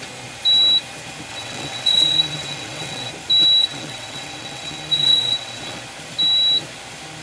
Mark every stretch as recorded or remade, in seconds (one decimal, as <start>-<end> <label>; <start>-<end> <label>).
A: 0.0-1.3 recorded; 1.3-3.1 remade; 3.1-3.6 recorded; 3.6-5.8 remade; 5.8-7.2 recorded